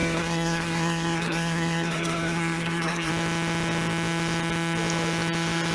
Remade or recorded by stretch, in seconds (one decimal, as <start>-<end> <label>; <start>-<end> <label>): 0.0-3.1 remade; 3.1-5.7 recorded